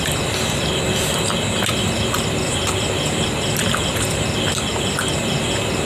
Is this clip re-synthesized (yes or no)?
no